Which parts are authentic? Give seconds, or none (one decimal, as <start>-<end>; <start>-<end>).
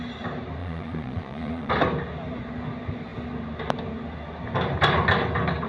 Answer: 0.0-0.6; 1.7-5.7